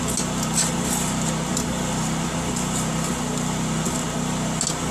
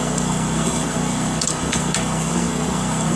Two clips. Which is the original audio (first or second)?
first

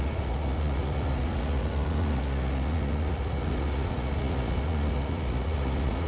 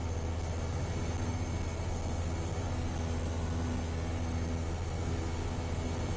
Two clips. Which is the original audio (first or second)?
second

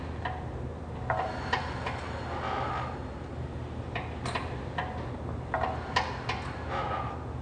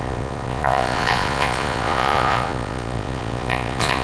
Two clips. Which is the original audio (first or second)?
first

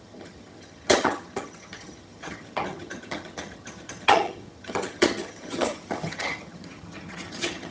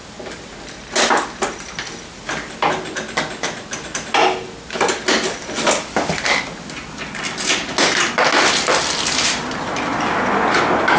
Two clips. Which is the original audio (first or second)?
second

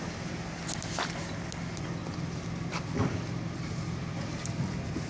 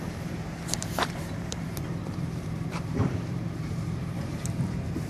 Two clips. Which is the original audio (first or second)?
first